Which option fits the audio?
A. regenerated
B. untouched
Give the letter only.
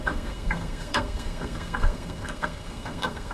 A